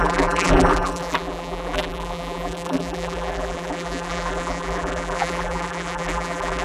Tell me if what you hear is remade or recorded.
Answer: remade